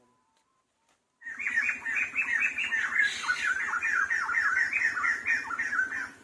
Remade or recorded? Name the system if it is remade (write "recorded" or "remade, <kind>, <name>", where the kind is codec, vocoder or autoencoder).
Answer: recorded